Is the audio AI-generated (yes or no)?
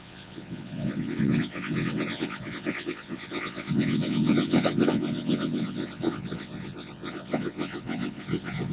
yes